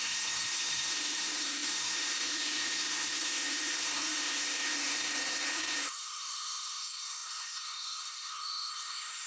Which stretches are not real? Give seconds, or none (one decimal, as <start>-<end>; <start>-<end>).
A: 0.0-9.3